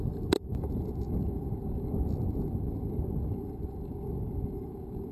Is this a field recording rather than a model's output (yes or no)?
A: yes